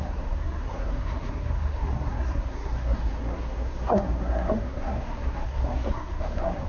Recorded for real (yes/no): no